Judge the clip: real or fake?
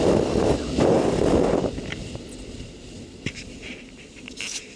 real